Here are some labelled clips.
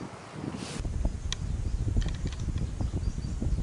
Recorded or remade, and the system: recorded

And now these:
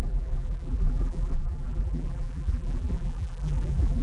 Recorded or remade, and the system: remade, vocoder, BigVGAN v2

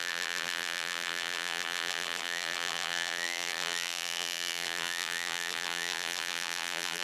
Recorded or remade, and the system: remade, vocoder, BigVGAN v2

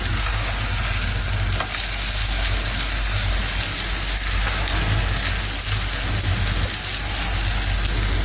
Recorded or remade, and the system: recorded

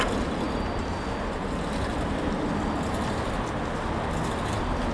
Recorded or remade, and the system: recorded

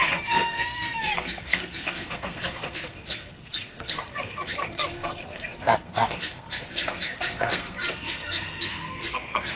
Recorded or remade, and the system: remade, codec, SNAC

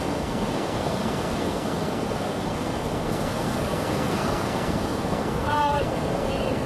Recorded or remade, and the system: remade, codec, SNAC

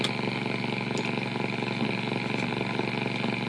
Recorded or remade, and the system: recorded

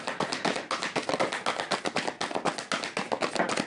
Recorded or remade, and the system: recorded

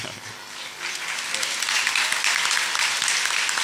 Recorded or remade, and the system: recorded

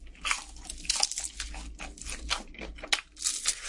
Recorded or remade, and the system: recorded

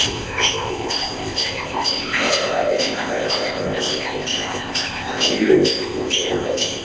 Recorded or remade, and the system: remade, codec, ZipCodec